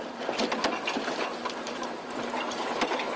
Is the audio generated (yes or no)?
yes